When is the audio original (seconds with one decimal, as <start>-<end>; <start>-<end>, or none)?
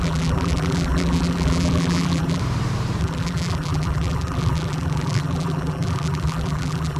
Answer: 2.4-3.0